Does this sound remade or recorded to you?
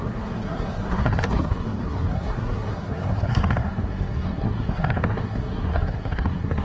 remade